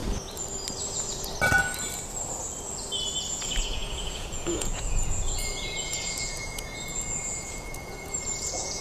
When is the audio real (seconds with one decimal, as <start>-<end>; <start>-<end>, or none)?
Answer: 0.0-3.3